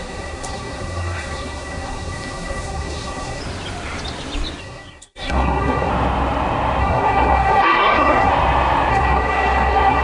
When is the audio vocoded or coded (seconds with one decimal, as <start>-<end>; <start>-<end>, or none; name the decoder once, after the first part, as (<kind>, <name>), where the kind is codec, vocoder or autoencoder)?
0.0-3.4 (codec, SNAC); 4.6-5.9; 6.8-8.3; 8.9-10.0